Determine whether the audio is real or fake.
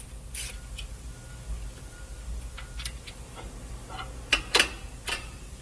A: real